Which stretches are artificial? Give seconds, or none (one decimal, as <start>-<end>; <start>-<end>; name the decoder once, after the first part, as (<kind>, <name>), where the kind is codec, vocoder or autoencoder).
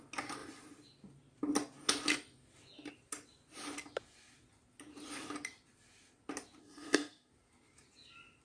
6.6-7.3 (codec, SNAC)